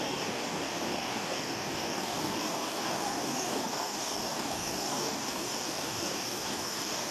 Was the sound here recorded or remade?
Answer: remade